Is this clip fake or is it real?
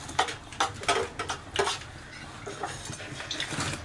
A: real